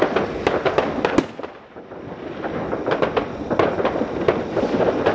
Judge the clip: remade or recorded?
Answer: recorded